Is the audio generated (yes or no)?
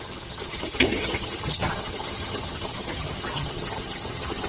yes